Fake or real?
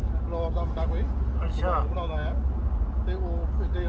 real